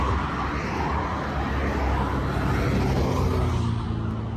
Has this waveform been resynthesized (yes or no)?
no